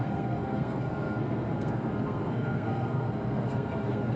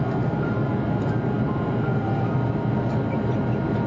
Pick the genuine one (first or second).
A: second